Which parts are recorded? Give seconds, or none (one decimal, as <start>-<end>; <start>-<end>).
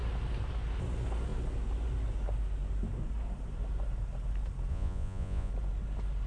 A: 0.0-4.7; 5.5-6.3